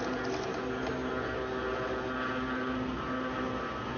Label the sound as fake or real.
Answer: real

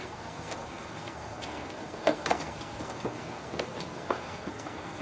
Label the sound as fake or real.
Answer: fake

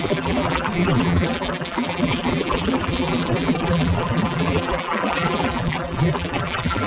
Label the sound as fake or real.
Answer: fake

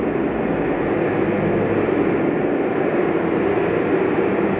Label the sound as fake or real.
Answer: real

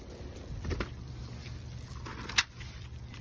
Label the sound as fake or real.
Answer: real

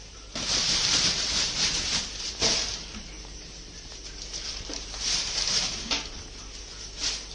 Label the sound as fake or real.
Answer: fake